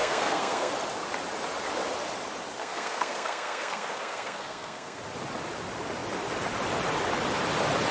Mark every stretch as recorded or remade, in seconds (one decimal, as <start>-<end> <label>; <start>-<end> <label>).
0.0-0.7 remade; 0.7-2.6 recorded; 2.6-5.0 remade; 5.0-7.9 recorded